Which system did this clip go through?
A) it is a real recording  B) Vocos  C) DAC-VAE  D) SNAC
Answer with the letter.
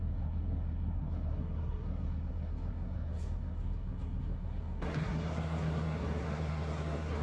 D